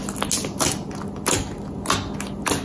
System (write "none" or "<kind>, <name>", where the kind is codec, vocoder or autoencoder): none